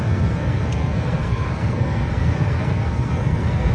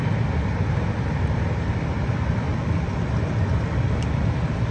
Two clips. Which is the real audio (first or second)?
second